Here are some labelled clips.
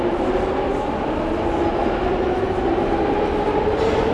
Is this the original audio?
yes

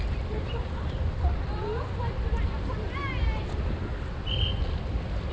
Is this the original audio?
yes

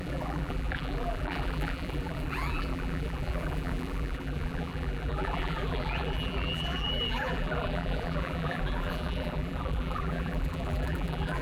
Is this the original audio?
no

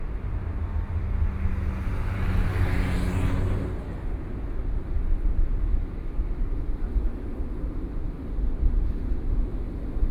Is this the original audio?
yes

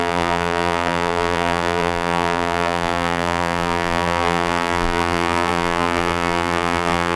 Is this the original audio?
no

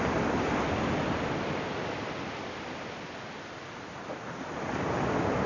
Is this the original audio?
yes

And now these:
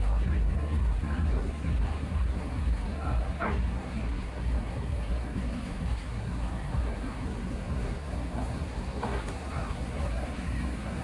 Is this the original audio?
no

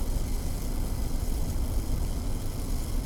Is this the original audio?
yes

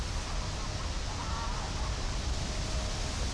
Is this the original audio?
yes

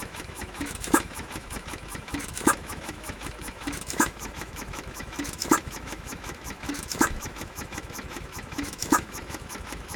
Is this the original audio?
no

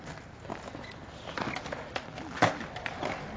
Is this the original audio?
yes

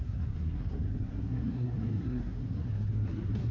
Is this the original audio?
no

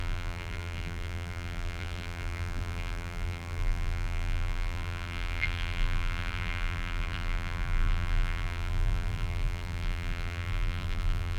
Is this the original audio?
no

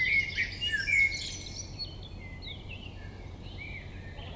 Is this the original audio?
yes